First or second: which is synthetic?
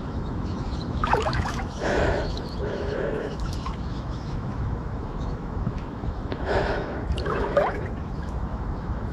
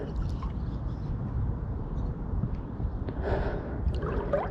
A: first